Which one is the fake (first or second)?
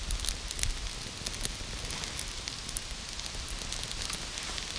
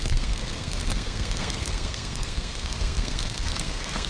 second